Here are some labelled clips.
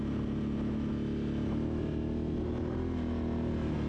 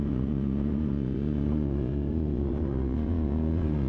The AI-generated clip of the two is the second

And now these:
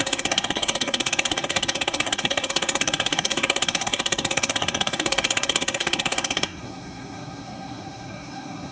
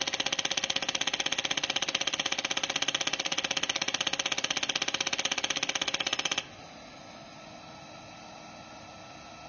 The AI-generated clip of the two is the first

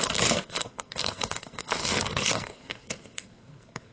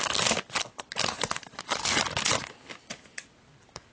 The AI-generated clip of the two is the first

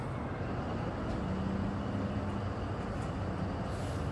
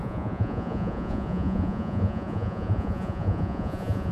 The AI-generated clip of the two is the second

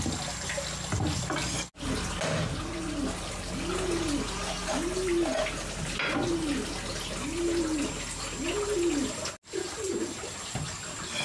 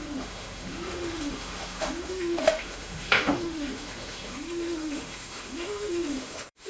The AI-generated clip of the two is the second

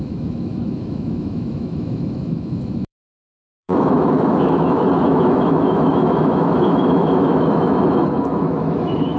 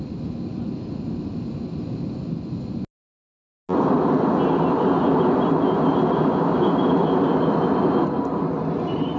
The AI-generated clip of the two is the first